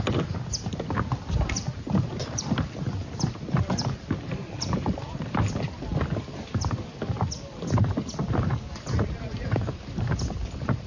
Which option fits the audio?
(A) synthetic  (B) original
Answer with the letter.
A